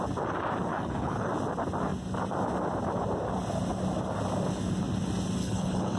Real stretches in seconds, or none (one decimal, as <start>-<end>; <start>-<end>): 0.0-0.7; 1.3-5.4